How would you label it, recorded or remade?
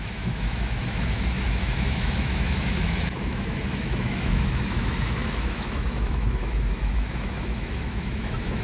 remade